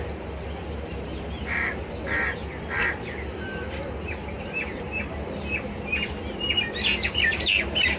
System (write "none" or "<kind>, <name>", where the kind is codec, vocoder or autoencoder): none